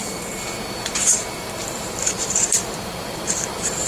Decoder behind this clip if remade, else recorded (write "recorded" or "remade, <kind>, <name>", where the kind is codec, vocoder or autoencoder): remade, vocoder, BigVGAN v2